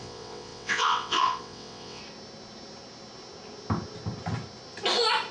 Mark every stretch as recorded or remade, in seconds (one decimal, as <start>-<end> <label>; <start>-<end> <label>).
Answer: 0.0-2.0 remade; 2.0-5.3 recorded